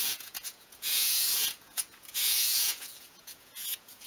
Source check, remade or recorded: remade